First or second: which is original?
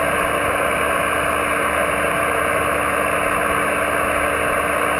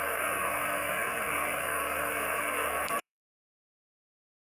first